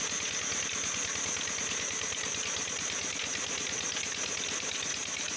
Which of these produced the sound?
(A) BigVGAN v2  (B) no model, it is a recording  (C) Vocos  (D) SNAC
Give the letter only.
B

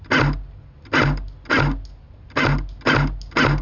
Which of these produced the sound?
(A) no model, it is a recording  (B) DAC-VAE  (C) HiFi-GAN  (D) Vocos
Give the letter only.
A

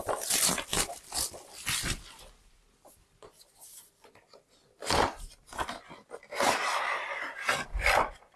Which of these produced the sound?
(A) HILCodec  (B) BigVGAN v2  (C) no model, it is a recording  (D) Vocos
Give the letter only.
C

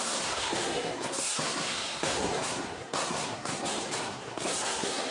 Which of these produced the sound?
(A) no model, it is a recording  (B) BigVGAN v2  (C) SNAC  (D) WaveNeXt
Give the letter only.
C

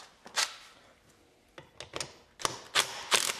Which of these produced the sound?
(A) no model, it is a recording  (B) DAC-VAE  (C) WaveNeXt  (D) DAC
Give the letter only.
A